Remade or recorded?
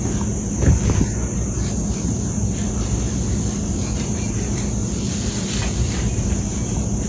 recorded